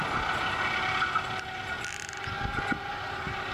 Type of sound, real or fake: real